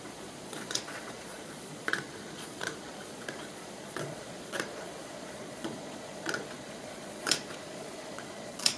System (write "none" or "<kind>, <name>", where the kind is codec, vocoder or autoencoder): vocoder, Vocos